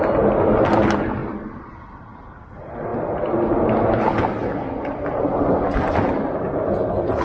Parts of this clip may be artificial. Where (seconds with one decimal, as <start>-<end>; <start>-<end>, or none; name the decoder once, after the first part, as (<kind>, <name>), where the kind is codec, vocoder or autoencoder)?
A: 1.2-2.1 (vocoder, BigVGAN v2)